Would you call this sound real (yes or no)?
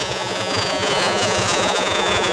no